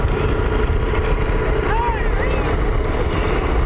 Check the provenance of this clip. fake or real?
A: real